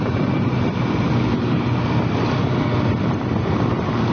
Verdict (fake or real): fake